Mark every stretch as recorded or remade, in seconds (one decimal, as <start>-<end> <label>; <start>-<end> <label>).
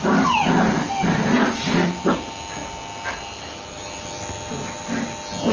0.0-5.5 recorded